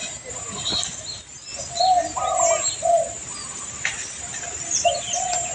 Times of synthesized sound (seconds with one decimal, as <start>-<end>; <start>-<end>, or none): none